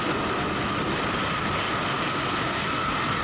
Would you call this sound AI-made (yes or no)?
no